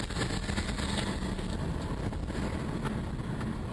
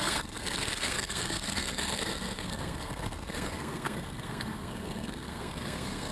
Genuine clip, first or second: first